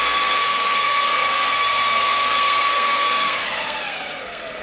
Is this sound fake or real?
fake